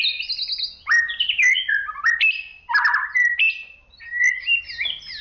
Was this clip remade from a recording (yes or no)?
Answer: no